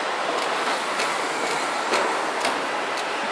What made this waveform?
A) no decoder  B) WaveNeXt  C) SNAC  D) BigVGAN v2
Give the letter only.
A